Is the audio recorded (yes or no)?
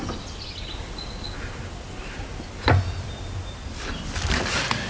yes